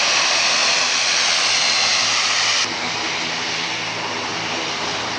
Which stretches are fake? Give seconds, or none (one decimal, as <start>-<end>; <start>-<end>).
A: 4.3-4.8